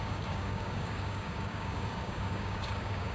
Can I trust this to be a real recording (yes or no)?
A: no